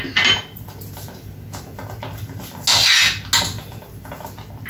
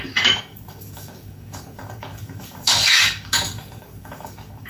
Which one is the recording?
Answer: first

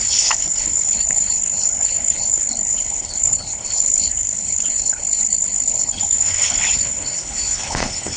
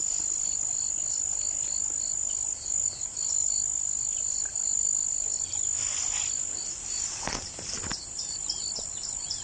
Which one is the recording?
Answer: second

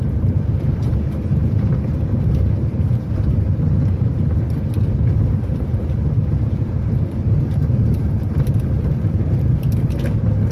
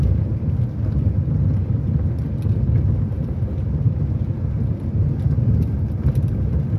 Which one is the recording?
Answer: second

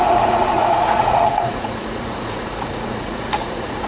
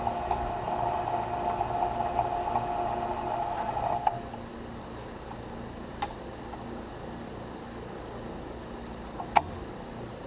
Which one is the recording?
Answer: second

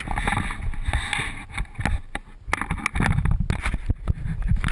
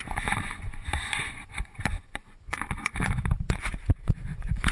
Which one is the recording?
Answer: first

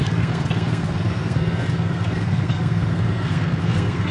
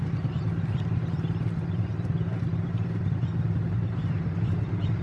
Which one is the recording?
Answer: second